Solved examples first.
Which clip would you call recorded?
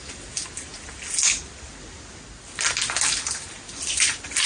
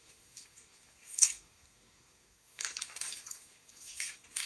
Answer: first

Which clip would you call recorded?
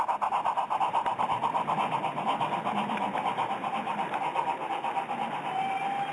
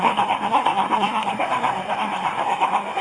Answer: first